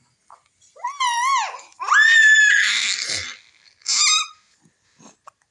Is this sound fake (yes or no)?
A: no